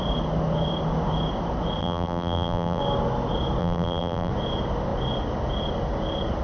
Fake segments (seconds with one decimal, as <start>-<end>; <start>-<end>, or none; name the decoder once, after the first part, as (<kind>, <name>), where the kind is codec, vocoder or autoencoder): 1.8-2.8 (vocoder, BigVGAN v2); 3.6-4.3